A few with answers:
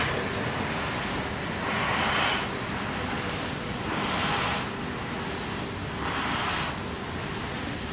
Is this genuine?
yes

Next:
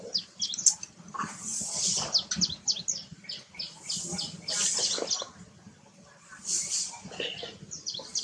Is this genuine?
yes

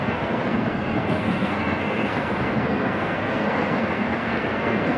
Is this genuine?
no